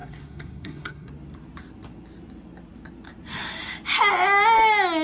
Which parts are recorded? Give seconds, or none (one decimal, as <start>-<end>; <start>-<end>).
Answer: 1.1-5.0